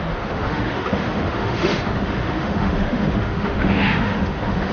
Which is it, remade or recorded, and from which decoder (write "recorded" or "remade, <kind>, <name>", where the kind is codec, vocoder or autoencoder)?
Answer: remade, autoencoder, DAC-VAE